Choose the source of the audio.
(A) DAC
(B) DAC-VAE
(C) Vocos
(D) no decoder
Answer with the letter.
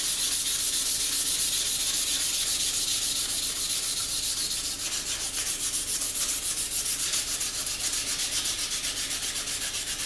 D